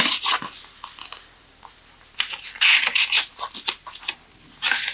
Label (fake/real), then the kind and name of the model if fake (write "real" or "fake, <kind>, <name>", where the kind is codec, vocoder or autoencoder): real